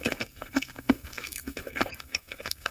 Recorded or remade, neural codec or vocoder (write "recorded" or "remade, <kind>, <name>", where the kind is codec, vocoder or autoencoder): remade, codec, SNAC